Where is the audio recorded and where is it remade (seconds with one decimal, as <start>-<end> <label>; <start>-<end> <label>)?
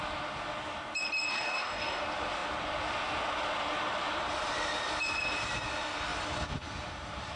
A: 0.0-1.3 recorded; 1.3-2.0 remade; 2.0-7.4 recorded